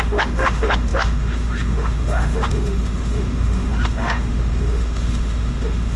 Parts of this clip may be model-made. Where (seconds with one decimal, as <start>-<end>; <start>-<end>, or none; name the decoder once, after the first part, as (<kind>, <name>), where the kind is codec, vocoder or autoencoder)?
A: 0.0-6.0 (autoencoder, DAC-VAE)